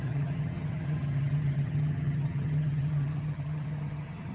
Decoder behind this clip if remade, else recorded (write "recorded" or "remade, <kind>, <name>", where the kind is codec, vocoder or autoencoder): remade, vocoder, HiFi-GAN